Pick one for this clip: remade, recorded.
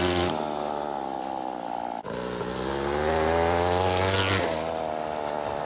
recorded